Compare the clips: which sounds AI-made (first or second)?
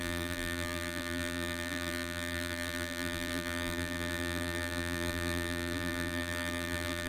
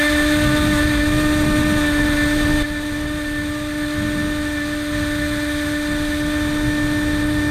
first